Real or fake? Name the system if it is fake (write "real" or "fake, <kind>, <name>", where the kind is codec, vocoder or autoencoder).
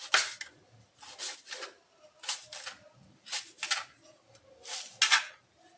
real